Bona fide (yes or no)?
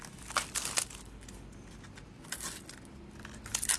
yes